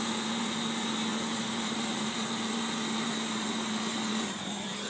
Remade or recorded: recorded